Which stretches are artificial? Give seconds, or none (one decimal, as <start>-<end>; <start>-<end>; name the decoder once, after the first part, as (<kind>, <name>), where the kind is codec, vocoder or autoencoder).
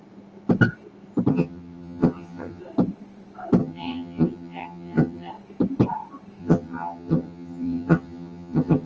1.3-2.6 (vocoder, HiFi-GAN); 3.6-5.3; 6.4-8.9